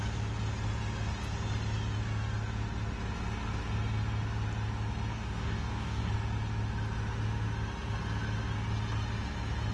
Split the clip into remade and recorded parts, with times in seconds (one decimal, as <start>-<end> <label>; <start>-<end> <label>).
0.0-5.1 recorded; 5.1-6.1 remade; 6.1-9.7 recorded